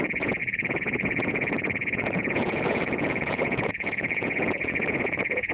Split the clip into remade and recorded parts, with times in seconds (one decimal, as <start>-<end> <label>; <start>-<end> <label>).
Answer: 0.0-5.5 remade